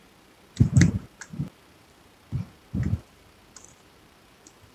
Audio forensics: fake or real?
fake